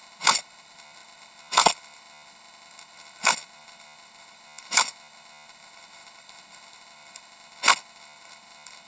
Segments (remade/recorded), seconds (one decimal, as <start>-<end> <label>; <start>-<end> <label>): 0.0-8.9 remade